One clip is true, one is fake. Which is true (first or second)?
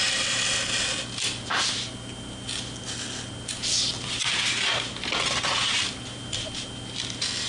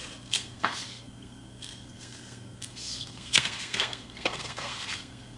first